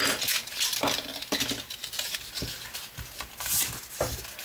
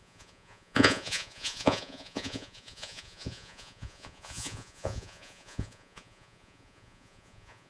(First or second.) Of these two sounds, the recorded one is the first